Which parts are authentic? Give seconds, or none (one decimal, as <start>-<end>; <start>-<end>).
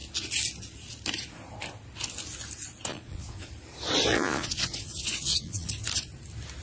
0.0-2.9; 3.5-4.1; 5.7-6.6